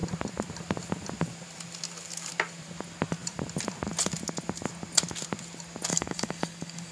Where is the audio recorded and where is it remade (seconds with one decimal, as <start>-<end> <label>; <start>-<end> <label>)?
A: 0.0-5.9 recorded; 5.9-6.9 remade